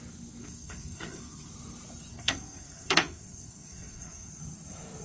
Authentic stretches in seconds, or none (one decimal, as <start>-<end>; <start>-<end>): 0.0-0.4; 1.5-2.1; 4.4-5.0